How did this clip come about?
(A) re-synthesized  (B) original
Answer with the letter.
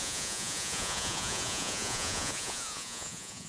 A